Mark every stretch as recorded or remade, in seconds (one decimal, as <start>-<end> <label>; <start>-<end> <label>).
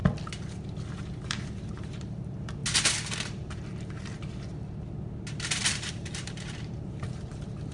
0.0-1.1 recorded; 1.1-2.6 remade; 2.6-5.9 recorded; 5.9-7.7 remade